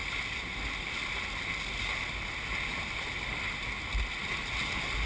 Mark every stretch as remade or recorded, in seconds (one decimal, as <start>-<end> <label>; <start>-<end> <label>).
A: 0.0-5.1 recorded